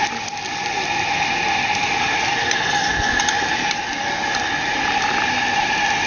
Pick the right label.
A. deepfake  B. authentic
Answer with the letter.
B